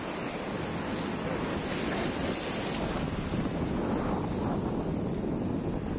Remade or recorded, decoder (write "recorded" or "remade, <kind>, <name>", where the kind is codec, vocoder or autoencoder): recorded